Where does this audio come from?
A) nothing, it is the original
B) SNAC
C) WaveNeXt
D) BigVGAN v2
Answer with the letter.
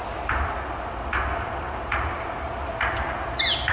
A